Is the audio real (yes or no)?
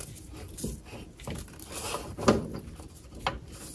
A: yes